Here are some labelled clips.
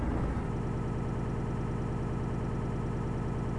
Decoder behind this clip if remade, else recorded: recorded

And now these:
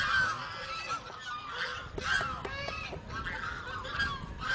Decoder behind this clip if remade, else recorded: recorded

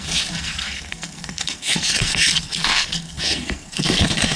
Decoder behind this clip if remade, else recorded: remade, codec, SNAC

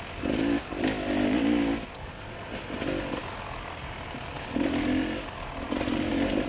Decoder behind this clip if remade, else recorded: recorded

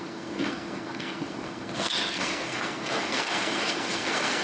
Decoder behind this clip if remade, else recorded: remade, codec, SNAC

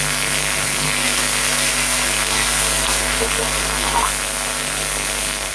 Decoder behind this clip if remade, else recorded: remade, codec, SNAC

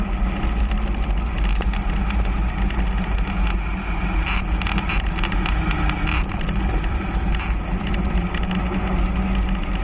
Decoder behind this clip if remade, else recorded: recorded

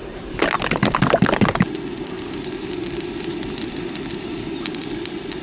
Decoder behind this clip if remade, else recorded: recorded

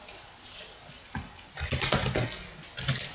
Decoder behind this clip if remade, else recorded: recorded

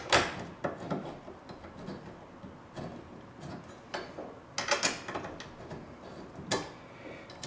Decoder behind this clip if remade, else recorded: recorded